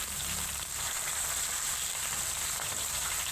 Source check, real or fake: fake